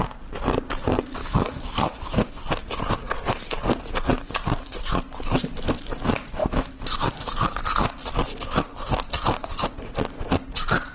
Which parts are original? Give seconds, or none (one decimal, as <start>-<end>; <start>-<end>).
0.0-1.2; 2.3-6.4; 7.1-10.9